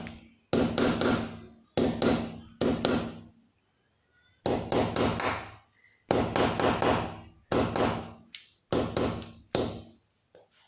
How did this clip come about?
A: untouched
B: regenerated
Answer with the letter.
A